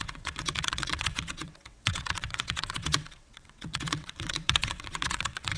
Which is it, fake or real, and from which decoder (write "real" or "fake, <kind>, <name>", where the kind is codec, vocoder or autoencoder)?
fake, vocoder, WaveNeXt